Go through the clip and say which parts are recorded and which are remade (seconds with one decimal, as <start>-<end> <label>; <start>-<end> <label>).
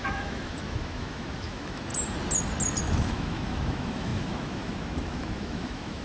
0.0-1.9 remade; 1.9-2.8 recorded; 2.8-6.0 remade